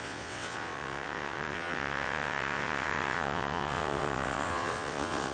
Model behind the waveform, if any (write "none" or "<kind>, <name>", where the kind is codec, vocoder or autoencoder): vocoder, WaveNeXt